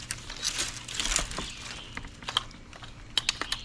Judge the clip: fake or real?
real